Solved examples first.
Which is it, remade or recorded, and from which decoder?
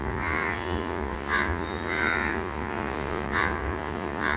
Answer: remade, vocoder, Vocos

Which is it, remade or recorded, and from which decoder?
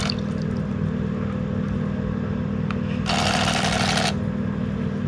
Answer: recorded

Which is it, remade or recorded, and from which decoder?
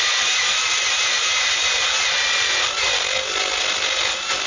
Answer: recorded